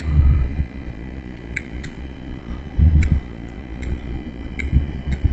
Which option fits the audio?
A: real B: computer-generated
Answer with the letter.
B